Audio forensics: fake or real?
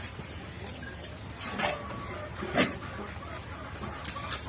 real